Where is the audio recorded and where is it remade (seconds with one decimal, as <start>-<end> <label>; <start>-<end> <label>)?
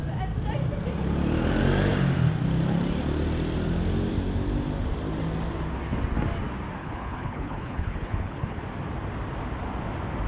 0.0-6.8 recorded; 6.8-8.6 remade; 8.6-10.3 recorded